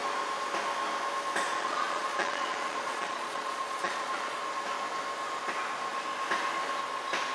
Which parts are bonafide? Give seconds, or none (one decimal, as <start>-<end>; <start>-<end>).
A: 0.0-1.5; 4.4-7.3